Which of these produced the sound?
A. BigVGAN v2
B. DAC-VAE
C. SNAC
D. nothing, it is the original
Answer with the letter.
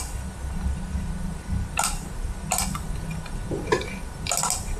D